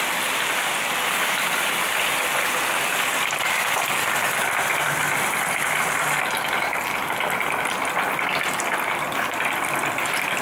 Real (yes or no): yes